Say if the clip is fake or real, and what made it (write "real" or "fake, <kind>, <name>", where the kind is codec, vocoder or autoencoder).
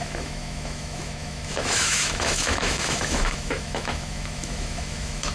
fake, autoencoder, DAC-VAE